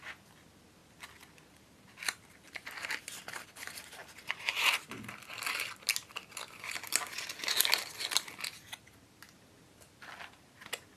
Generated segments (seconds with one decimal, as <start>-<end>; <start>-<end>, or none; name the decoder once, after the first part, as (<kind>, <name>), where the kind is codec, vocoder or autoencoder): none